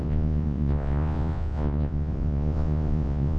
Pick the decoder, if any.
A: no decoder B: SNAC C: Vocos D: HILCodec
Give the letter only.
C